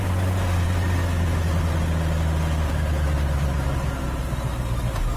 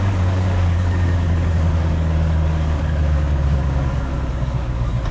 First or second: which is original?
first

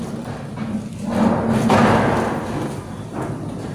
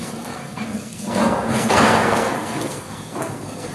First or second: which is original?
first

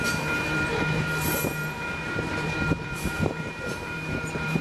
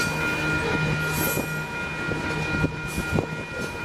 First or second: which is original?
second